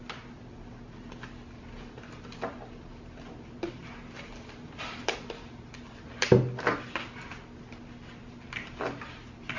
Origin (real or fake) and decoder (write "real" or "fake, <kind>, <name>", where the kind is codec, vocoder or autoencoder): real